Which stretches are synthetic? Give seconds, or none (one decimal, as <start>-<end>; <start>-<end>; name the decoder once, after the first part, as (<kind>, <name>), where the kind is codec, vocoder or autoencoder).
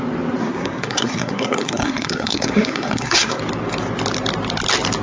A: 0.4-3.4 (codec, SNAC)